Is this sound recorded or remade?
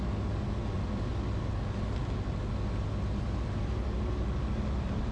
recorded